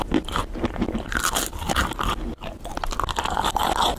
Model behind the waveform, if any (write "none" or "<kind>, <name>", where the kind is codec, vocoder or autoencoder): none